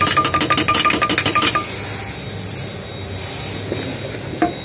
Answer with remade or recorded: recorded